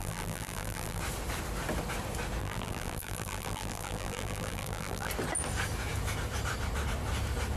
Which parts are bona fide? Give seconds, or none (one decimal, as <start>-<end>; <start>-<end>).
1.0-2.4; 5.1-7.6

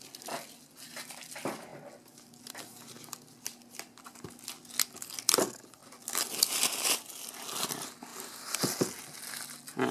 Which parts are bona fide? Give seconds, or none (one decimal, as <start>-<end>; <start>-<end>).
0.0-9.9

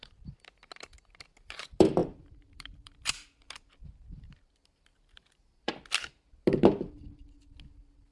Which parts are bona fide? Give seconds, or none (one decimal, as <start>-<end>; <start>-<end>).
0.0-2.0; 3.4-4.9; 5.7-8.1